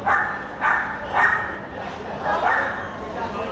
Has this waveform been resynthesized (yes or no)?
yes